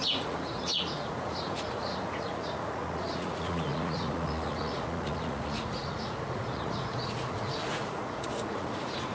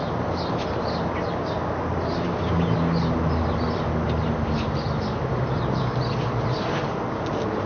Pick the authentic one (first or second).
second